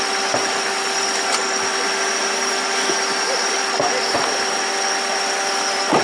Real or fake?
real